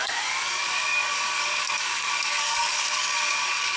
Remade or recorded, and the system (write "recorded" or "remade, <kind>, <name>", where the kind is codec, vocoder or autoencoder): remade, codec, DAC